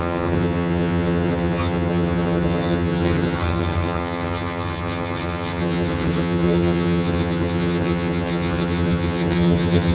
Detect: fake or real fake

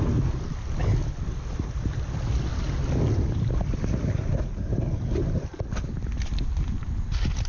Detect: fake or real real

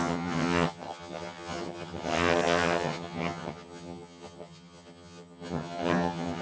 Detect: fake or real fake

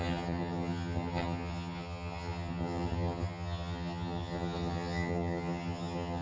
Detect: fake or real fake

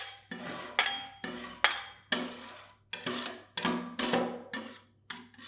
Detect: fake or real real